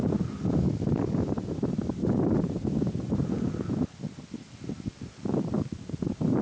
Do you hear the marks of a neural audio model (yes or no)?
no